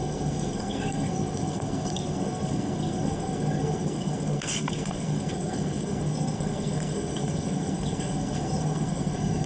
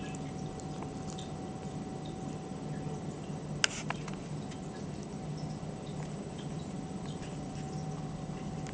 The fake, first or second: first